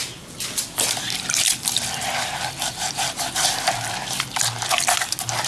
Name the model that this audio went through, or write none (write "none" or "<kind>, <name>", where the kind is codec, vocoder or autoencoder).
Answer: none